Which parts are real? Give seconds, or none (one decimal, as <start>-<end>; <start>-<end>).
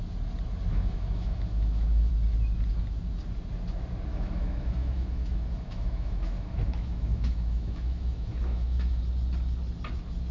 0.0-0.7; 2.1-4.1; 9.0-10.3